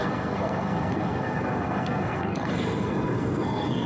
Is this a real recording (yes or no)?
no